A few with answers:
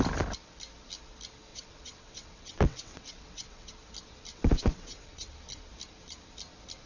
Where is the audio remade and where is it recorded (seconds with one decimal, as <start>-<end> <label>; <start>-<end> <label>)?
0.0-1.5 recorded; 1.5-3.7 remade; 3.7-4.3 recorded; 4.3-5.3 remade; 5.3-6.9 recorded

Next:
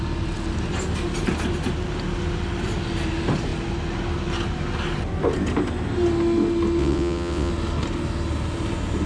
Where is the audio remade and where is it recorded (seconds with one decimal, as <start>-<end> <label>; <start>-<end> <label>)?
0.0-6.8 recorded; 6.8-7.5 remade; 7.5-9.1 recorded

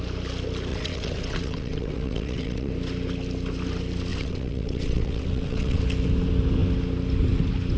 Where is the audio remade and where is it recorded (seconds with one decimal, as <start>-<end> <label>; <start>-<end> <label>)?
0.0-0.7 recorded; 0.7-2.7 remade; 2.7-4.1 recorded; 4.1-5.8 remade; 5.8-7.8 recorded

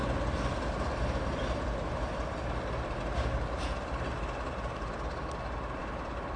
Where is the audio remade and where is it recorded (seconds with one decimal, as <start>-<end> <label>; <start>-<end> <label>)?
0.0-6.4 recorded

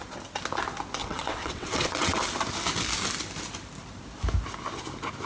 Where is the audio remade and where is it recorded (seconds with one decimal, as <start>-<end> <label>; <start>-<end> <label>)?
0.0-1.0 recorded; 1.0-2.2 remade; 2.2-5.3 recorded